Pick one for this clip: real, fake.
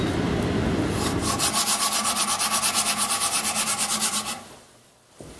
real